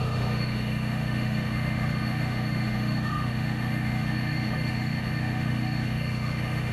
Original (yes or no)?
no